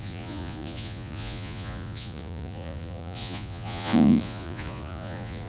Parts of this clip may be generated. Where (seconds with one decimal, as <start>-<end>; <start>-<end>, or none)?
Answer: 0.0-5.5

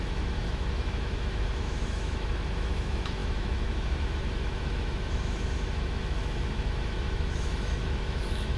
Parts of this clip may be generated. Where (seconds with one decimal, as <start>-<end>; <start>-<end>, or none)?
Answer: 0.0-8.6